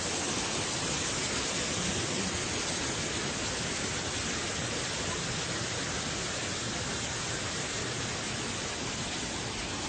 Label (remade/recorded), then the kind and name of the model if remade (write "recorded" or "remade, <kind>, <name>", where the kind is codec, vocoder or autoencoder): recorded